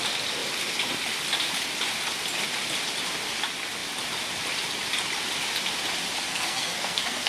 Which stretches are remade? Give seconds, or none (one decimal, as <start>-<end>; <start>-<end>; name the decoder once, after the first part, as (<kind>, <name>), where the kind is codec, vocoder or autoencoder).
6.3-7.3 (codec, SNAC)